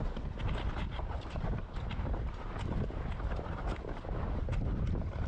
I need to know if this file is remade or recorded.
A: recorded